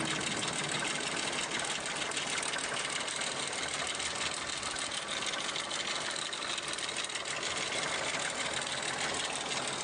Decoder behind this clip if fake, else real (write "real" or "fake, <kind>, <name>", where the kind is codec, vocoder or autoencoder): real